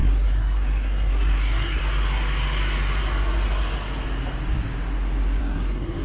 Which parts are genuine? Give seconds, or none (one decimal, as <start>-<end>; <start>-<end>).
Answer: 1.8-5.4